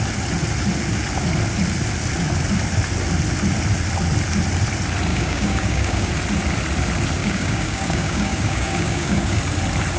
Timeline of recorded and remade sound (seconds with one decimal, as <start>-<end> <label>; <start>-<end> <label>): 0.0-5.1 recorded; 5.1-6.1 remade; 6.1-7.2 recorded; 7.2-9.4 remade; 9.4-10.0 recorded